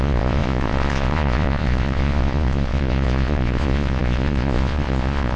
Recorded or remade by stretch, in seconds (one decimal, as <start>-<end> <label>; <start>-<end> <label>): 0.0-5.4 remade